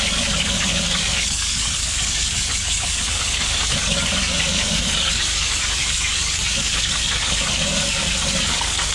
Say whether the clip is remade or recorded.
remade